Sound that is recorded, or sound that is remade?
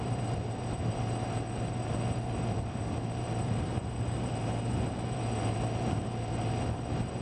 remade